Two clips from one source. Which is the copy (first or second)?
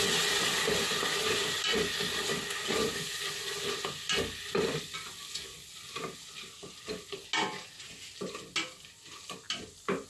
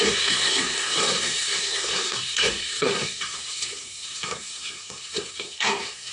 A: second